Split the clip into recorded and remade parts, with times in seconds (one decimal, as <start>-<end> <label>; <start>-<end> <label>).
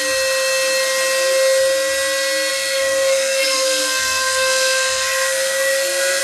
0.0-2.5 recorded; 2.5-6.2 remade